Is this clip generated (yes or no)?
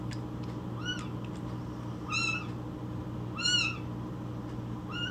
no